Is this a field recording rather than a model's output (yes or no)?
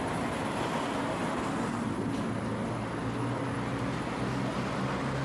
yes